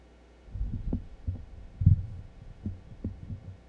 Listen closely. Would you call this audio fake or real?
fake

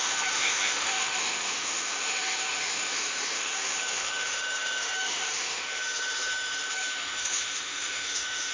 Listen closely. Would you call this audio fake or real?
fake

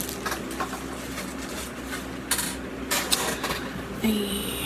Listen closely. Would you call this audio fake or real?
real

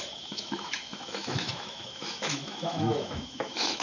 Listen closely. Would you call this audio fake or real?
fake